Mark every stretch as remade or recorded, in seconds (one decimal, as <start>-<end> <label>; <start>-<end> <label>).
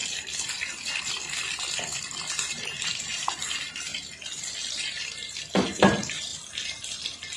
0.0-1.0 recorded; 1.0-3.9 remade; 3.9-4.9 recorded; 4.9-6.3 remade; 6.3-7.4 recorded